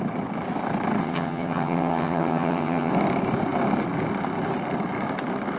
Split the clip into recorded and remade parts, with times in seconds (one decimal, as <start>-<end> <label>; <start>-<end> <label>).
0.0-1.0 recorded; 1.0-2.9 remade; 2.9-5.6 recorded